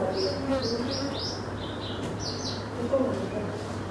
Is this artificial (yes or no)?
yes